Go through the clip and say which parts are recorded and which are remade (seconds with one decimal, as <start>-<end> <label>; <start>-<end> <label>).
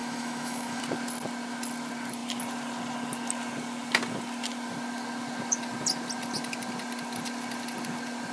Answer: 0.0-0.8 remade; 0.8-8.3 recorded